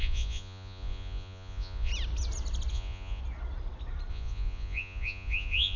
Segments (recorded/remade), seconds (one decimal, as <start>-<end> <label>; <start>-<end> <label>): 0.0-1.9 remade; 1.9-2.7 recorded; 2.7-3.2 remade; 3.2-4.1 recorded; 4.1-5.8 remade